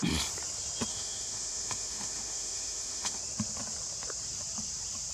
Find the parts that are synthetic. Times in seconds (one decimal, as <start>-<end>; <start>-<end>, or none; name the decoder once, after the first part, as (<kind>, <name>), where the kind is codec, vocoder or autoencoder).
0.9-3.2 (autoencoder, DAC-VAE)